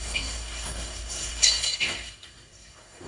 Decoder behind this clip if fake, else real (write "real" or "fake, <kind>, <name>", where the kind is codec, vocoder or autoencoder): fake, codec, SNAC